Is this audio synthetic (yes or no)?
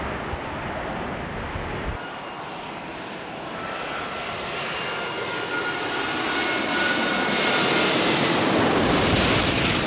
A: no